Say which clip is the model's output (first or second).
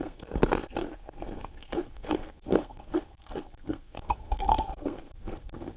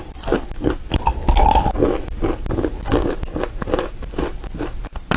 first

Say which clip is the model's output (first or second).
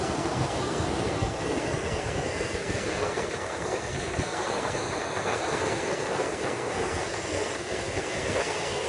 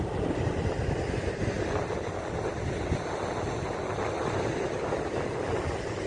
first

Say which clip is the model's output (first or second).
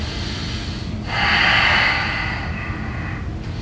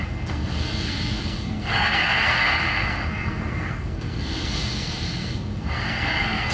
second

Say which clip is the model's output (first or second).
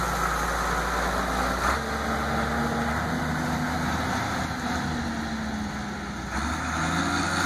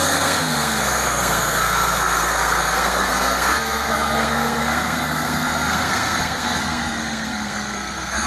second